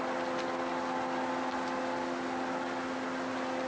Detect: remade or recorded recorded